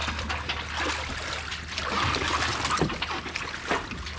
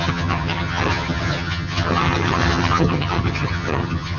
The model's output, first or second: second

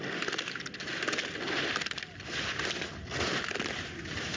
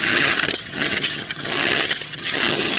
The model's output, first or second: second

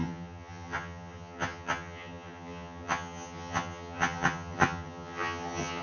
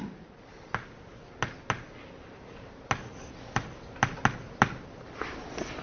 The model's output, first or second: first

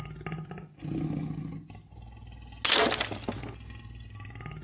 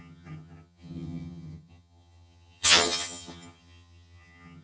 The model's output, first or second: second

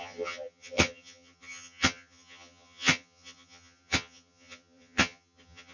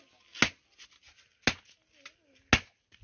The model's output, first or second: first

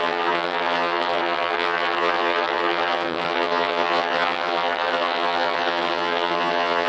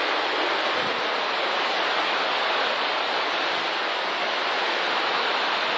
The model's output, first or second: first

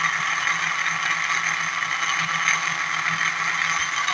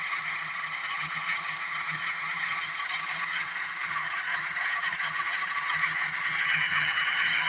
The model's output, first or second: second